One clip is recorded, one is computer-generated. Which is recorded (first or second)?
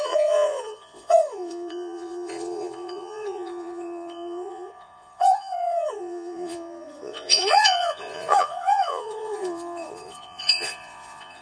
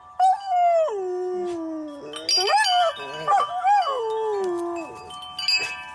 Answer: second